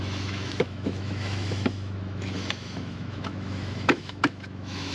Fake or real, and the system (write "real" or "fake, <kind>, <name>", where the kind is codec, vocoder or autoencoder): fake, autoencoder, DAC-VAE